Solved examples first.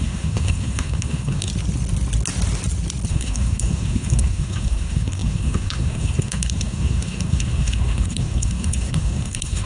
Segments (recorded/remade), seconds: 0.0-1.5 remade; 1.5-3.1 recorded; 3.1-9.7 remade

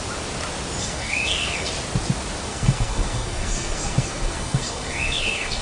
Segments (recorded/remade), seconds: 0.0-0.8 recorded; 0.8-1.7 remade; 1.7-2.5 recorded; 2.5-5.6 remade